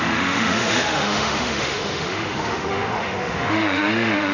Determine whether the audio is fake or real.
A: fake